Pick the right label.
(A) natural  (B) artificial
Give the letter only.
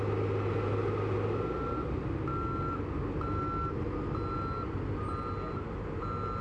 A